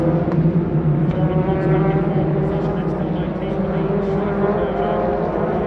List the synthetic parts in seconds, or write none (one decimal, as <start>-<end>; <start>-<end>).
0.0-2.4